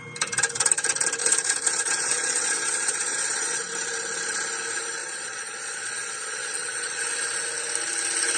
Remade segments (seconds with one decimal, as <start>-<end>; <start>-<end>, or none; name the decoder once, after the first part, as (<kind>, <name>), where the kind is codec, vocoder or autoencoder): 1.2-3.6 (vocoder, Vocos); 5.0-7.0